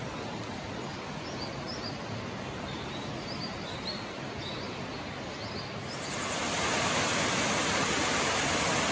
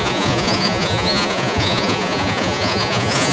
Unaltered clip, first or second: first